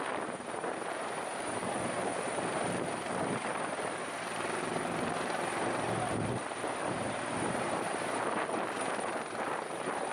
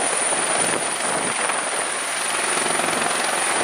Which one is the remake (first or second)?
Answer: first